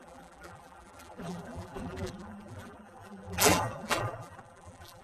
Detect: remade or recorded remade